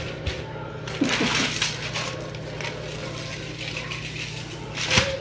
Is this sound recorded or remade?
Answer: recorded